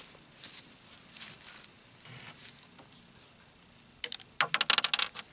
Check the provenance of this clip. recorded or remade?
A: recorded